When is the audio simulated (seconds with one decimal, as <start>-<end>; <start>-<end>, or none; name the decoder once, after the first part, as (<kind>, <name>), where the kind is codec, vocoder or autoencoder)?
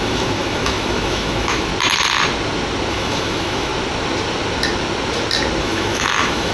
0.0-1.7 (autoencoder, DAC-VAE); 2.9-3.7; 5.6-6.5